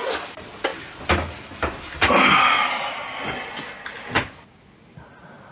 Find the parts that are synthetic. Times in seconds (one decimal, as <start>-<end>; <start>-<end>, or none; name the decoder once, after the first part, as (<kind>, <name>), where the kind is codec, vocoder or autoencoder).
none